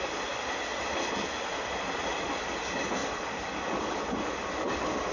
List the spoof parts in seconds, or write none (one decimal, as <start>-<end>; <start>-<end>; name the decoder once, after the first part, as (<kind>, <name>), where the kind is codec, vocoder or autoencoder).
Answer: none